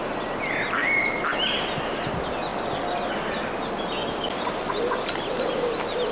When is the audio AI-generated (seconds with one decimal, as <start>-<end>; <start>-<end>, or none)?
2.5-3.6; 4.0-4.7